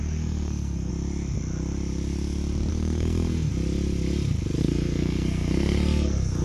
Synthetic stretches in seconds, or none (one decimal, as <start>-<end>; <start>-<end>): 0.0-0.9; 2.7-3.5; 4.6-6.4